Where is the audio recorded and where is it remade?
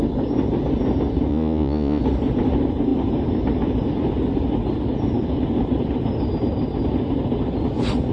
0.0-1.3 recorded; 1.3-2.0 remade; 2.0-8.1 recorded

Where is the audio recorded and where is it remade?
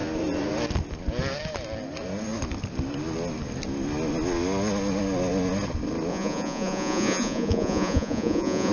0.0-6.1 recorded; 6.1-8.7 remade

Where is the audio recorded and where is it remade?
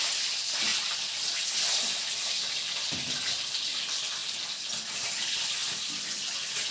0.0-6.7 recorded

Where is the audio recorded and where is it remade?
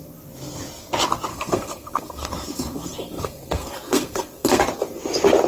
0.0-1.3 recorded; 1.3-4.6 remade; 4.6-5.5 recorded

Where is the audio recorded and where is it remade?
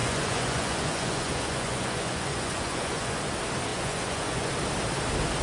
0.0-3.2 remade; 3.2-3.7 recorded; 3.7-4.5 remade; 4.5-5.4 recorded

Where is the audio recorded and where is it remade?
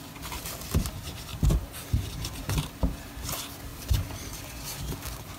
0.0-3.7 recorded; 3.7-4.4 remade; 4.4-5.4 recorded